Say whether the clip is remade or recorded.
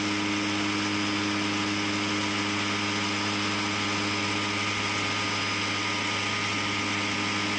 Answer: recorded